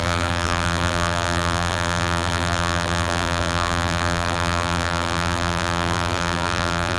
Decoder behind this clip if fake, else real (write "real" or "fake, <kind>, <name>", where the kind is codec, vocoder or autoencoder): fake, vocoder, BigVGAN v2